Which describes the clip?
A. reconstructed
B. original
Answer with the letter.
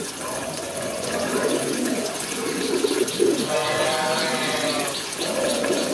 A